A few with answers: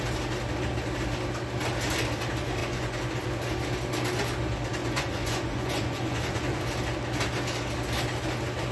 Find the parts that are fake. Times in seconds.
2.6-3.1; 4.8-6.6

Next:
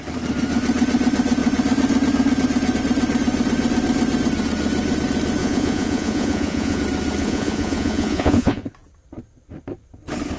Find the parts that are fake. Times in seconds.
5.4-6.8; 7.2-8.7

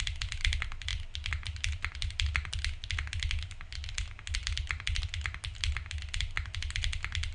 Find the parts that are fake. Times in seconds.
none

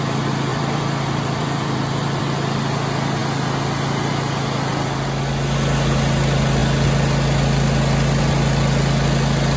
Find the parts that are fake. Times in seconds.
0.5-2.2

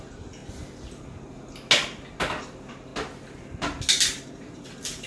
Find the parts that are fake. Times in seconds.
0.0-0.4; 2.2-2.9; 4.3-5.1

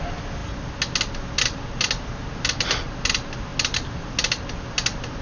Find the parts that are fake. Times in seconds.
none

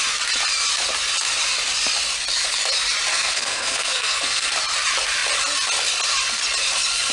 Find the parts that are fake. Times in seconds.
3.1-4.5

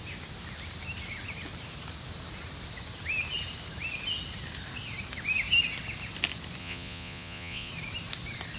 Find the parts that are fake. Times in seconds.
6.6-7.7